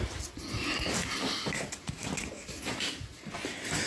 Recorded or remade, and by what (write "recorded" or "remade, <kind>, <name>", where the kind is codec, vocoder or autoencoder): recorded